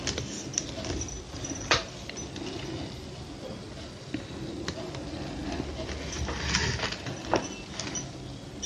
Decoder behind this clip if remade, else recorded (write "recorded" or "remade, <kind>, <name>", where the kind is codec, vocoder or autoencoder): recorded